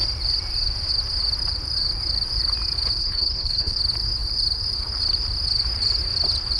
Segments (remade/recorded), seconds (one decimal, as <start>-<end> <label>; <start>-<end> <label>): 0.0-3.0 recorded; 3.0-3.8 remade; 3.8-6.6 recorded